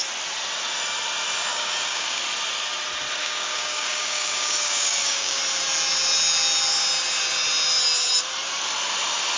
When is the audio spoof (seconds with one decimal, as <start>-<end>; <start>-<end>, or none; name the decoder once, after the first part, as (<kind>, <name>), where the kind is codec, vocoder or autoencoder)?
1.5-2.2 (codec, DAC); 3.2-5.4